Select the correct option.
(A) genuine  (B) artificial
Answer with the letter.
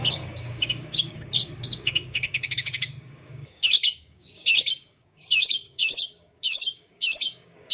B